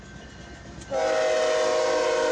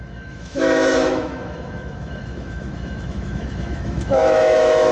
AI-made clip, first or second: second